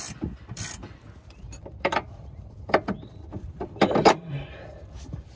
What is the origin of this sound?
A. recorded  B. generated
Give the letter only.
B